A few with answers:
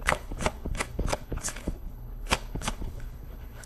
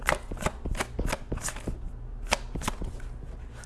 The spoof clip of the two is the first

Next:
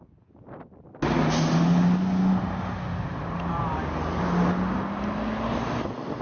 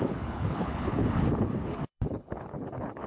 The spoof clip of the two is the second